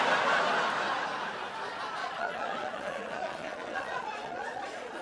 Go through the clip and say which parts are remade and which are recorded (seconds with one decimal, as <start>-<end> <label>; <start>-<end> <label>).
0.0-2.0 recorded; 2.0-5.0 remade